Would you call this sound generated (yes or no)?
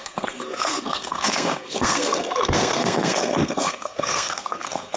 yes